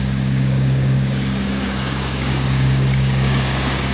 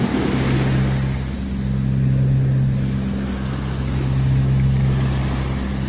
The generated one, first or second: first